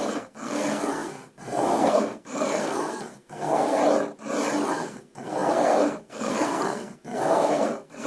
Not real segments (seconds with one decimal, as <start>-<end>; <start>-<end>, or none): 0.0-3.8; 4.7-8.1